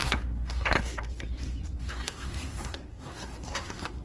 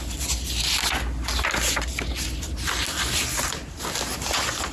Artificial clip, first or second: first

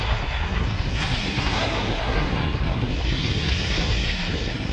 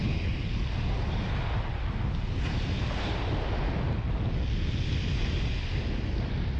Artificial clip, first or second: first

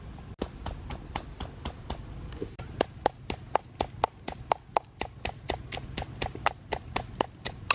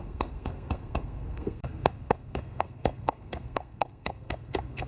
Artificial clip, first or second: second